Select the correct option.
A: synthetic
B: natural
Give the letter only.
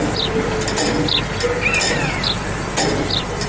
B